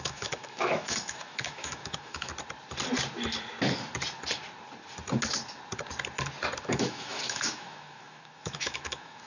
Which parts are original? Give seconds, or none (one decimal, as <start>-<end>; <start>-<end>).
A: 2.3-6.6